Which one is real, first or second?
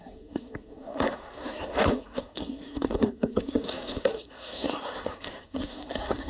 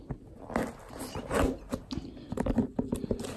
second